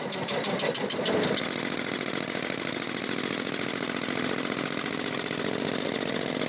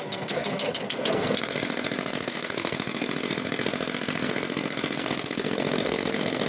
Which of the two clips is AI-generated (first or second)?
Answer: second